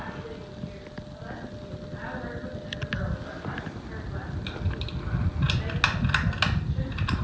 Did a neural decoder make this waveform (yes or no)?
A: no